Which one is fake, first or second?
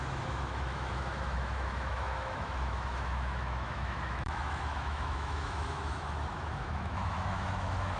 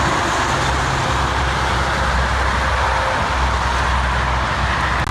first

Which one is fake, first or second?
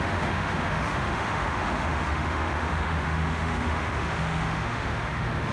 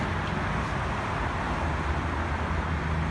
first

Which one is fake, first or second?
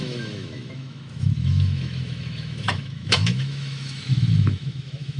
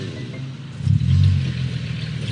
first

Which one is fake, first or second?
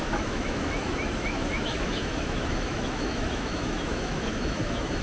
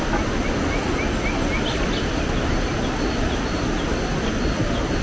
first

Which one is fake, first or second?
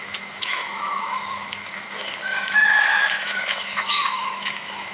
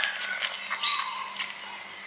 first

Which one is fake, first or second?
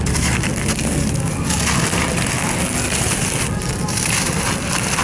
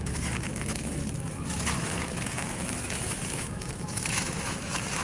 second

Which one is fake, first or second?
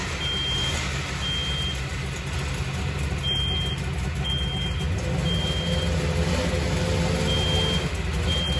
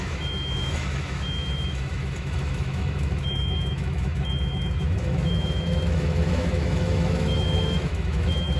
second